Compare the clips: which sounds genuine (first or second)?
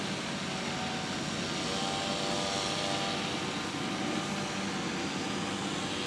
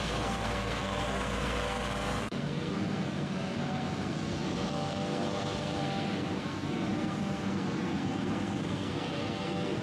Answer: first